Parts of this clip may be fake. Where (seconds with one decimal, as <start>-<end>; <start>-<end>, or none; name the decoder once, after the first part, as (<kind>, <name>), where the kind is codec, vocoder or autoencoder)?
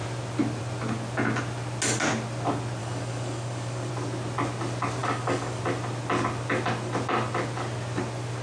2.8-3.9 (codec, DAC); 5.0-5.6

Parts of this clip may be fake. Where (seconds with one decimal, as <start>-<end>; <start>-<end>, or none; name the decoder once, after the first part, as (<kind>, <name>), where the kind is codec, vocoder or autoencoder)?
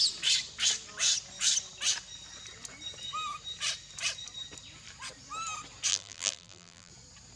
5.9-6.9 (vocoder, BigVGAN v2)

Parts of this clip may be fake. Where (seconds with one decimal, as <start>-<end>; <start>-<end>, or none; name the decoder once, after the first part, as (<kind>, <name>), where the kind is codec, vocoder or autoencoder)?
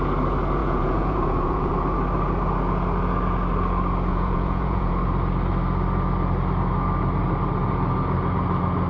0.6-1.7 (vocoder, Vocos); 4.1-4.9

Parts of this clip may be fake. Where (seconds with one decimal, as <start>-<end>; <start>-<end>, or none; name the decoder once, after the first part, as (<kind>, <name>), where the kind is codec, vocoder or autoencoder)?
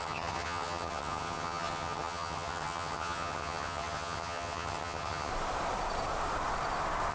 0.0-5.3 (vocoder, HiFi-GAN)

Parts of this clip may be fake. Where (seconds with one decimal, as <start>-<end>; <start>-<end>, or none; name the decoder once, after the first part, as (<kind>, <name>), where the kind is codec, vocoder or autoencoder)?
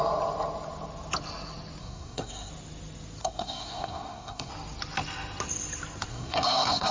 1.8-2.5 (codec, SNAC); 3.2-4.5; 6.1-6.9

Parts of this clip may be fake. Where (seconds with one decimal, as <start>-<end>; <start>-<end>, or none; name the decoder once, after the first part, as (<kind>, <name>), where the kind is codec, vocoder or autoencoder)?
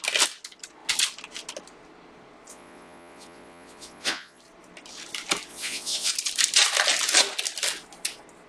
2.5-4.4 (vocoder, Vocos); 5.5-6.1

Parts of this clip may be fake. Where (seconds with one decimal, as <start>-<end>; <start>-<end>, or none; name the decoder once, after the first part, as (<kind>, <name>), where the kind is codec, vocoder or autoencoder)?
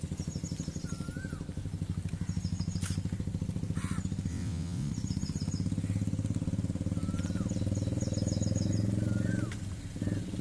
4.3-4.9 (vocoder, WaveNeXt)